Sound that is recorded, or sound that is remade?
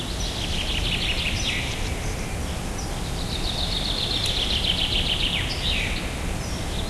recorded